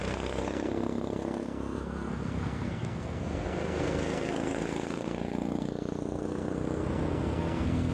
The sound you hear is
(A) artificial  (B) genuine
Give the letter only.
A